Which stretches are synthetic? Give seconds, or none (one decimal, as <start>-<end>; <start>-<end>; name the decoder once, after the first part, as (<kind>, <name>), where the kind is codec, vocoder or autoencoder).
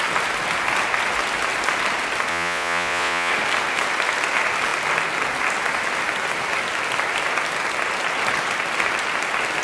2.3-3.3 (vocoder, Vocos)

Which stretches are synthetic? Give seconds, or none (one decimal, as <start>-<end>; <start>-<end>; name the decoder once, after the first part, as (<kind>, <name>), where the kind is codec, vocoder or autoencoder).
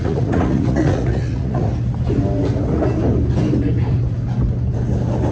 0.0-1.7 (vocoder, Vocos)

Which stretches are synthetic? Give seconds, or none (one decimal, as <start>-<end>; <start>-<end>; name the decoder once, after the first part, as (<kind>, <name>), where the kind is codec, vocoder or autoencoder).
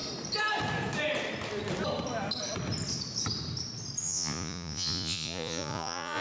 4.0-6.2 (vocoder, Vocos)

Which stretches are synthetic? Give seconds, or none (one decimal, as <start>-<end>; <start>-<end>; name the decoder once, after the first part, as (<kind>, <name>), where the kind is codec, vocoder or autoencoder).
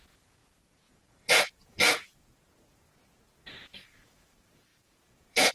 0.0-5.5 (vocoder, Vocos)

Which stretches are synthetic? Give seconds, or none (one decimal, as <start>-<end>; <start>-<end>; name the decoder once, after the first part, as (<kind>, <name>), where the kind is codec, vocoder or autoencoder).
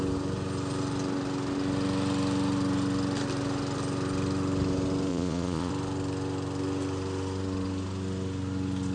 5.1-5.7 (vocoder, Vocos)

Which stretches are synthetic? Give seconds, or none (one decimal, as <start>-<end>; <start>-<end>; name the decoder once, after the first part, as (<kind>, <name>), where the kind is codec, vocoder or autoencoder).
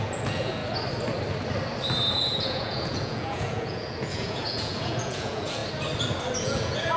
0.0-0.6 (vocoder, Vocos); 2.1-5.6; 6.4-7.0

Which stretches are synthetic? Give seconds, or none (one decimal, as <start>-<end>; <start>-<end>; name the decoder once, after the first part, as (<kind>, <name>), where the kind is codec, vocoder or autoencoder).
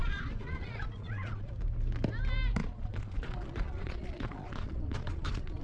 0.0-1.5 (vocoder, Vocos); 2.6-5.6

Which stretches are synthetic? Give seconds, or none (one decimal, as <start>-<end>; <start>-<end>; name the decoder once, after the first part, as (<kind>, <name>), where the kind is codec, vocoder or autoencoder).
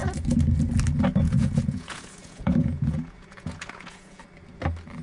1.2-4.2 (vocoder, Vocos)